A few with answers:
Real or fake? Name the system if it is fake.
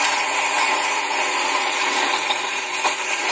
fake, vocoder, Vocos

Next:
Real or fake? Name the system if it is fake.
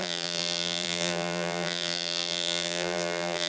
fake, vocoder, BigVGAN v2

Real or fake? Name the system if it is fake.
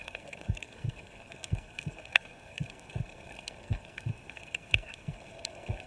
fake, codec, SNAC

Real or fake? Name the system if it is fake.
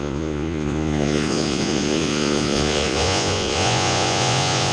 fake, vocoder, Vocos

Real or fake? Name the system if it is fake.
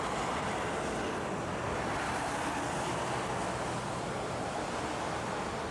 real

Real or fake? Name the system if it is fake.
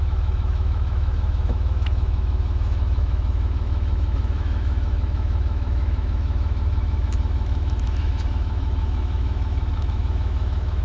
fake, autoencoder, DAC-VAE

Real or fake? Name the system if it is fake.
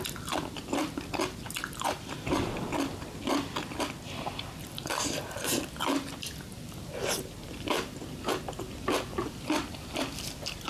fake, vocoder, BigVGAN v2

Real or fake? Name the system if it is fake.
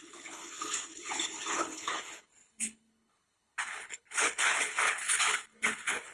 fake, codec, HILCodec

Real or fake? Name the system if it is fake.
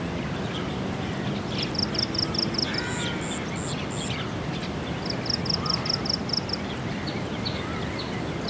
real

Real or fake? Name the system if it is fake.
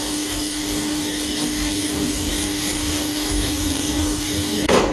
fake, codec, DAC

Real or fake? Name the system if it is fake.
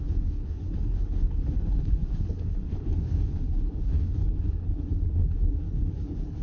fake, codec, HILCodec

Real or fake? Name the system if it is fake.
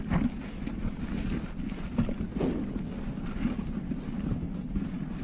real